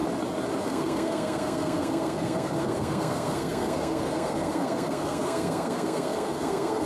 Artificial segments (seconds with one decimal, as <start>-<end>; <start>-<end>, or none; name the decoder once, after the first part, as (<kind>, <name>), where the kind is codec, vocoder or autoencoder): 0.6-6.9 (codec, SNAC)